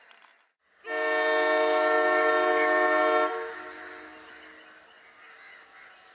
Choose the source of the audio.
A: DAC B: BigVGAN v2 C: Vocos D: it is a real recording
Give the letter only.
D